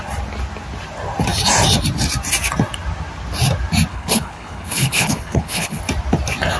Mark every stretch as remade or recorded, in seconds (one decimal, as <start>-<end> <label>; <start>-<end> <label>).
0.0-3.9 recorded; 3.9-5.8 remade; 5.8-6.6 recorded